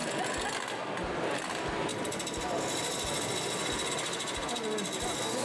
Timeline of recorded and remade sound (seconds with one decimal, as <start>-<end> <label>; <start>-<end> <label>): 0.0-1.9 recorded; 1.9-3.9 remade; 3.9-5.4 recorded